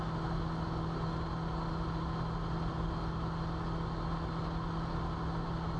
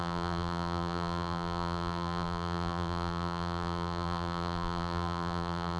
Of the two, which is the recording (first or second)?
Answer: first